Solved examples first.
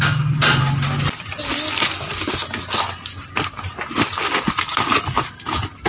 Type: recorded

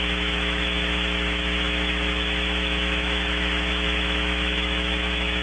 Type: remade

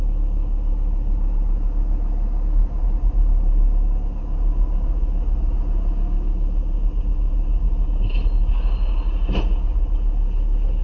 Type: recorded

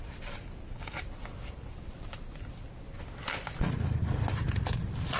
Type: recorded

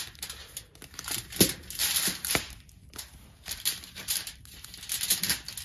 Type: recorded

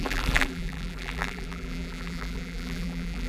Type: remade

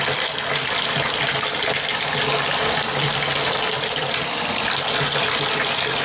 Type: recorded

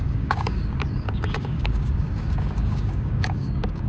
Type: remade